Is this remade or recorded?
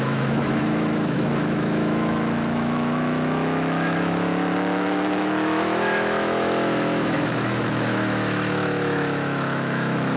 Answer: remade